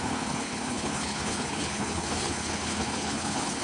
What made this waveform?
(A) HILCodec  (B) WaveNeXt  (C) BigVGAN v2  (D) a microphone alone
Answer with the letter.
A